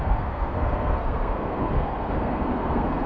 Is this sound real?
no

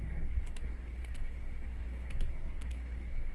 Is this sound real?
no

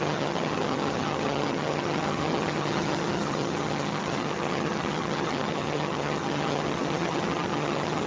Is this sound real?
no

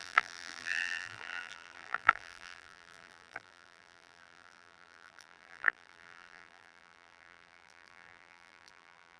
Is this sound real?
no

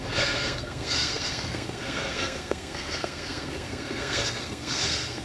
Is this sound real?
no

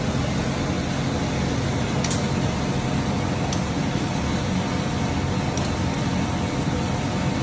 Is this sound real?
yes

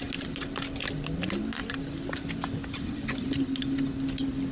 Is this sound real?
yes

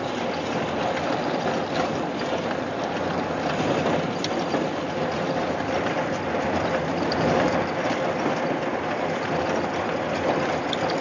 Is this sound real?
no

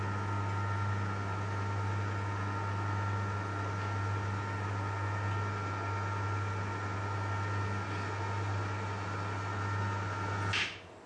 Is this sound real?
yes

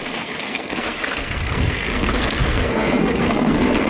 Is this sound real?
no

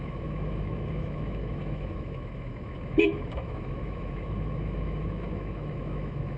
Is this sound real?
no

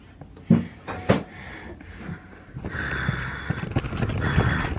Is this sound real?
yes